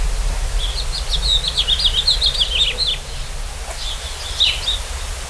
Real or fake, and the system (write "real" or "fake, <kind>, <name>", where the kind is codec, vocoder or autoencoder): real